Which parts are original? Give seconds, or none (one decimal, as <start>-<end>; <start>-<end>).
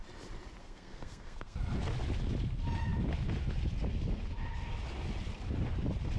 0.0-0.6; 1.6-6.2